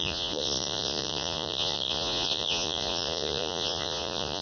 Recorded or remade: remade